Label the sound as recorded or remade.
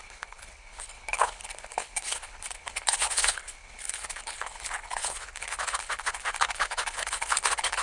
remade